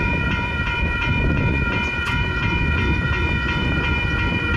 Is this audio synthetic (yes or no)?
yes